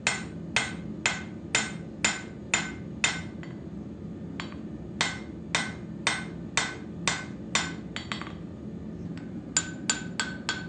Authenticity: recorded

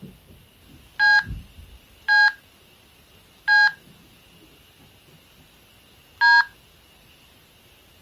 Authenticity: recorded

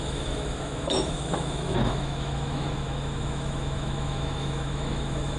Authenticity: remade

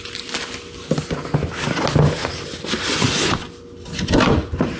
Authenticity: recorded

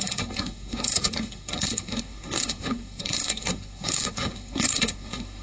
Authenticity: remade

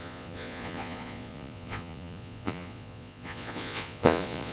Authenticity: remade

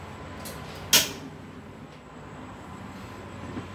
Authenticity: recorded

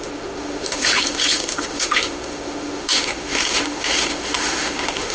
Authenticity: remade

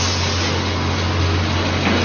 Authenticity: recorded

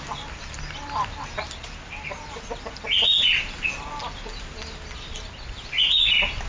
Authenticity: recorded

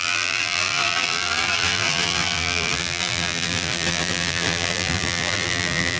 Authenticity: remade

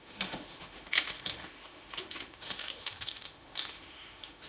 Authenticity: remade